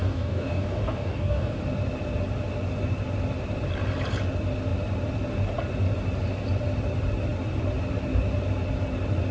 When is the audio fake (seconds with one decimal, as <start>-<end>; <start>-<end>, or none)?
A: 0.0-1.6